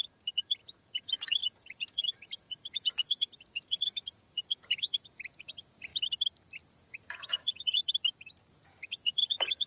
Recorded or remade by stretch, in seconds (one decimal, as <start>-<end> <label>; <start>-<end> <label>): 0.0-5.9 remade; 5.9-6.7 recorded; 6.7-7.8 remade; 7.8-8.5 recorded; 8.5-9.7 remade